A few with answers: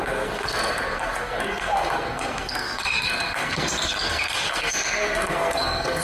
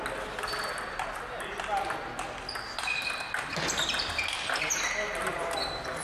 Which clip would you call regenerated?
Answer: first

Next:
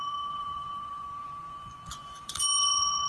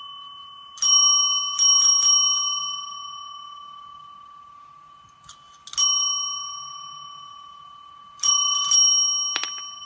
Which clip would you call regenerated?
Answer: first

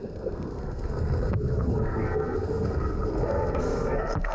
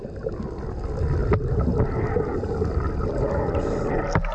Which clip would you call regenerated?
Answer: first